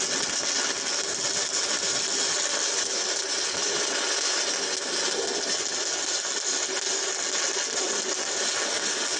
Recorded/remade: recorded